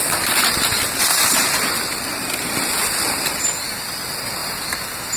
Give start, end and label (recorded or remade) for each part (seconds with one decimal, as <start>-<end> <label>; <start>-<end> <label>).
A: 0.0-1.1 recorded; 1.1-3.8 remade; 3.8-5.2 recorded